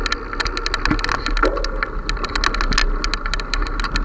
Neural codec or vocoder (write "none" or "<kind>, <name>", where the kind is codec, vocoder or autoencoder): none